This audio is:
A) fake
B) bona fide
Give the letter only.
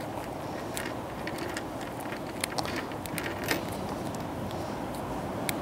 B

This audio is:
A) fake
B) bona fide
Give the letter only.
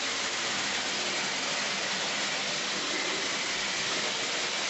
B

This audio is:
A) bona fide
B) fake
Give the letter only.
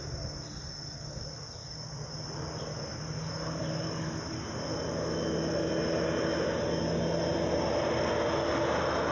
A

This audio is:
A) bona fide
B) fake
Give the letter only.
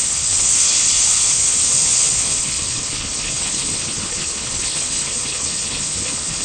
B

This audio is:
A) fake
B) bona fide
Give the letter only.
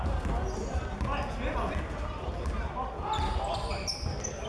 B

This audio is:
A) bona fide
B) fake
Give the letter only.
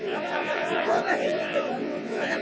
B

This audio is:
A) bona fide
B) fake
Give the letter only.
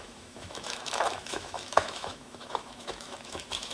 B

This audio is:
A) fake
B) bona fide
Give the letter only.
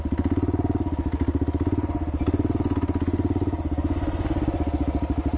B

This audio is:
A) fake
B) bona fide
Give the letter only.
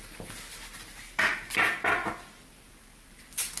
B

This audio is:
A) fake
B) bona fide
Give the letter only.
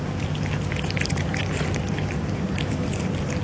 B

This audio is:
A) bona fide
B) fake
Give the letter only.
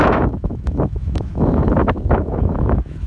B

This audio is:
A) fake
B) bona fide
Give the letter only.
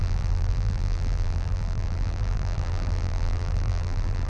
A